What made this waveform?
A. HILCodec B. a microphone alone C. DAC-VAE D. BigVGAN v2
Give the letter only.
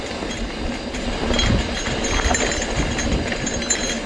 B